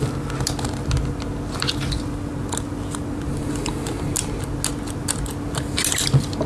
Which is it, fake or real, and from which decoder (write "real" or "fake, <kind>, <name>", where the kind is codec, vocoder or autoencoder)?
real